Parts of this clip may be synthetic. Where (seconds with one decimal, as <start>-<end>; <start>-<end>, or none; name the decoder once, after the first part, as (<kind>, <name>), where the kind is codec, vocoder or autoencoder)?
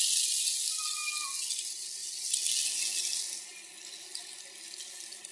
none